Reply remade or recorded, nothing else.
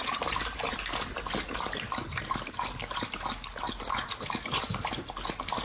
recorded